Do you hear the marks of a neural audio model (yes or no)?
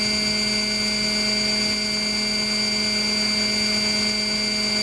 no